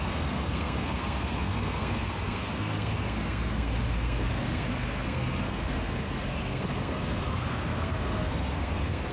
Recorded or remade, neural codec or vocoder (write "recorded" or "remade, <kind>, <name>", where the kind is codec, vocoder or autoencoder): remade, codec, SNAC